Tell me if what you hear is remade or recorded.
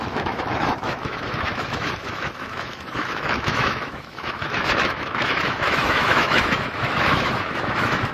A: remade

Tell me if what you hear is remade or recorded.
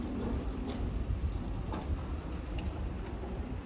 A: recorded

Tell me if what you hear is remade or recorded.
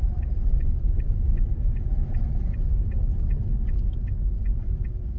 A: recorded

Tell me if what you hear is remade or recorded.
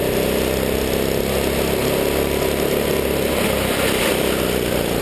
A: recorded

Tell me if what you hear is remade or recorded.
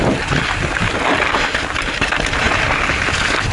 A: recorded